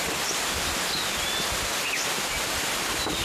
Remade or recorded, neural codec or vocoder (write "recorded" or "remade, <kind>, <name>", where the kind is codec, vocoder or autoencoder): recorded